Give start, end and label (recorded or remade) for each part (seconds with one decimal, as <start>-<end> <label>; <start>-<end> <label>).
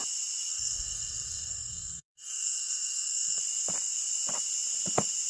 0.0-0.5 recorded; 0.5-3.4 remade; 3.4-5.3 recorded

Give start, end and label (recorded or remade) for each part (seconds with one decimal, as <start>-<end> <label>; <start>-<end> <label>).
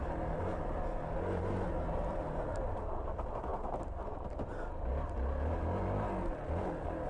0.0-7.1 recorded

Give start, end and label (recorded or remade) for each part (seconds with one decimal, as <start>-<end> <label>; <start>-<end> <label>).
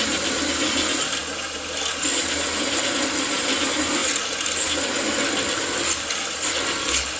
0.0-7.2 recorded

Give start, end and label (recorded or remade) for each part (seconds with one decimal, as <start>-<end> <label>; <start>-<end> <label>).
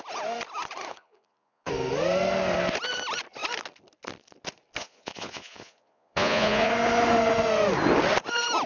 0.0-0.9 recorded; 0.9-1.7 remade; 1.7-4.8 recorded; 4.8-6.7 remade; 6.7-8.7 recorded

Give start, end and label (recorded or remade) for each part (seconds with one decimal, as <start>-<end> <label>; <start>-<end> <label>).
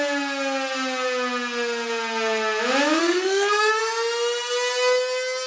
0.0-3.0 recorded; 3.0-3.8 remade; 3.8-5.5 recorded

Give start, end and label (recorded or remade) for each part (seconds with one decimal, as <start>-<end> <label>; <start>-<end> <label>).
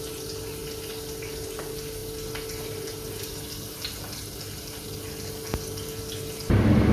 0.0-6.9 recorded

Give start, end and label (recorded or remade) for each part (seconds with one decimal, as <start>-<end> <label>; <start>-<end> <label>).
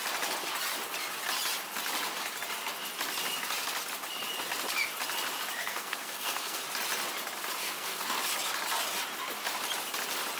0.0-5.6 recorded; 5.6-6.6 remade; 6.6-7.6 recorded; 7.6-8.2 remade; 8.2-10.4 recorded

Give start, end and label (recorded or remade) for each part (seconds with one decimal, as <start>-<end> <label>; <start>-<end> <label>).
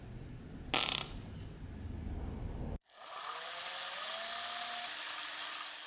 0.0-5.9 recorded